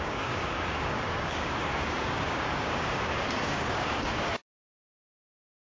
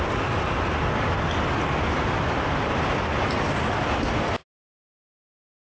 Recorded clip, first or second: second